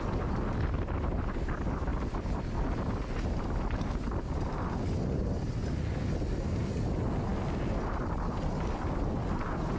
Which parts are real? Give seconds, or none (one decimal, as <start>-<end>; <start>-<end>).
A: 0.0-9.8